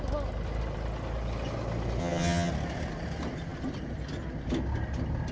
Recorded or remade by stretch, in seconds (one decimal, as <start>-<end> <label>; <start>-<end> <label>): 0.0-2.0 recorded; 2.0-2.5 remade; 2.5-5.3 recorded